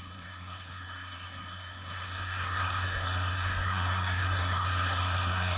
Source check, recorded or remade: remade